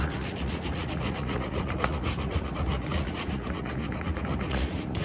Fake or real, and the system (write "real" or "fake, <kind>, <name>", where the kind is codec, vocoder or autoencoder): fake, vocoder, Vocos